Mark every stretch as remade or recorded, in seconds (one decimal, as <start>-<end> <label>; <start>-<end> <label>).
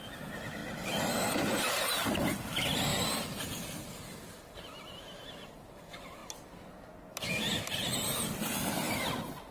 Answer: 0.0-0.6 remade; 0.6-1.8 recorded; 1.8-6.2 remade; 6.2-9.5 recorded